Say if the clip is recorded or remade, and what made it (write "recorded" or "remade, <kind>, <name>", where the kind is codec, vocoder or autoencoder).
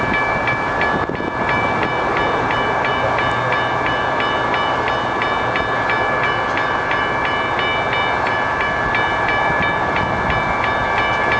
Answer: recorded